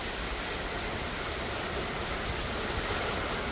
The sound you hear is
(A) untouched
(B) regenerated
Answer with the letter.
A